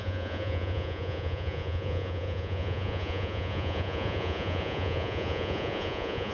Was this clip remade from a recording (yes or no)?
yes